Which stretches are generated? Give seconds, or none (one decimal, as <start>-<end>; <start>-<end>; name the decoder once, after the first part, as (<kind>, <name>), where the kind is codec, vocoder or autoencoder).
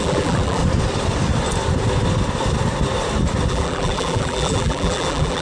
0.0-0.6 (vocoder, BigVGAN v2); 3.5-5.4